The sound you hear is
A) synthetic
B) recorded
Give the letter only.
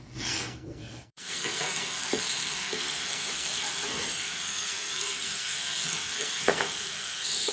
A